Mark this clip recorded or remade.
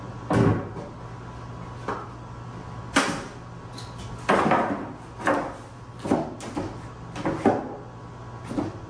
recorded